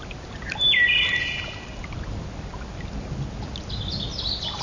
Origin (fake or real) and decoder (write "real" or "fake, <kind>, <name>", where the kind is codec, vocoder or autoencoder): real